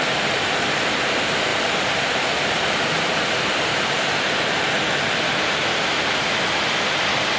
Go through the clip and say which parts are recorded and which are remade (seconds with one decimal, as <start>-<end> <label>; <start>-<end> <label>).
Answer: 0.0-7.4 recorded